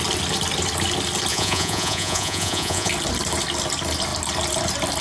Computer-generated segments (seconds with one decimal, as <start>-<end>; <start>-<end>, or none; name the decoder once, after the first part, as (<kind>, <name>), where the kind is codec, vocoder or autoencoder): 1.3-2.9 (vocoder, Vocos)